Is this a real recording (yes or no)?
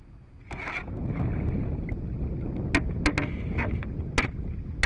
yes